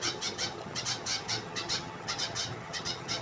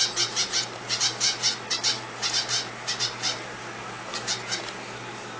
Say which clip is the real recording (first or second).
second